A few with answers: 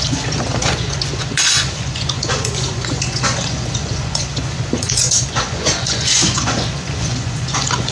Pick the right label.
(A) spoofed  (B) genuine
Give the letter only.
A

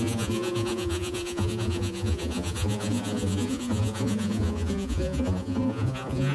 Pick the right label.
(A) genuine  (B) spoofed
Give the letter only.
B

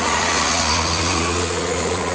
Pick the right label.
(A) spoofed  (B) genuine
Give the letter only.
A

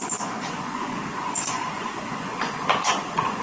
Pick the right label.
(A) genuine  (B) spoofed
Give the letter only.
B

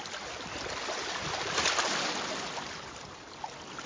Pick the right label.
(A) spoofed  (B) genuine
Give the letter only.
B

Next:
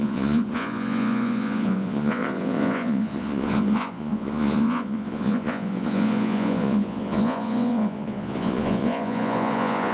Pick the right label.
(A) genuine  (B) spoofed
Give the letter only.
B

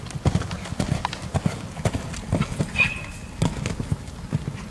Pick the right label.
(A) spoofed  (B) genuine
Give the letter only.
B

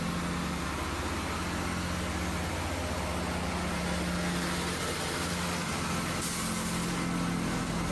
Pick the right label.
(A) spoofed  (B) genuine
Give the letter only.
B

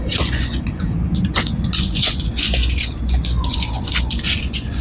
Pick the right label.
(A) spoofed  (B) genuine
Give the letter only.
A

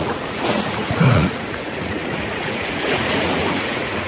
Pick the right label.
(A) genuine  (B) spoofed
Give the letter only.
B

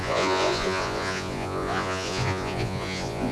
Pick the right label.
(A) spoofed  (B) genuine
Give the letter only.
A